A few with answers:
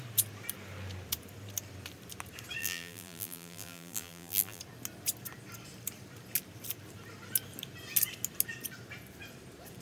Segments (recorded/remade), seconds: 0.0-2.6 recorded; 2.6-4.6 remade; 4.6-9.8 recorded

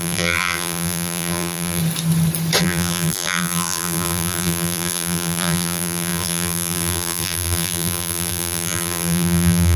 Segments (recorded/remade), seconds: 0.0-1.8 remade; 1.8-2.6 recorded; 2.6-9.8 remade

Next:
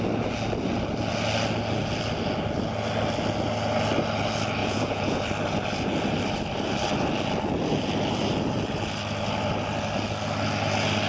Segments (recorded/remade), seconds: 0.0-4.6 recorded; 4.6-5.2 remade; 5.2-11.1 recorded

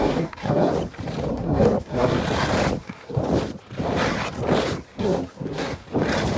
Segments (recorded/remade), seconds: 0.0-0.7 remade; 0.7-1.3 recorded; 1.3-2.2 remade; 2.2-2.8 recorded; 2.8-3.2 remade; 3.2-5.0 recorded; 5.0-5.8 remade; 5.8-6.4 recorded